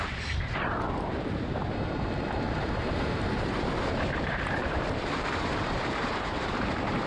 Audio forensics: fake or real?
fake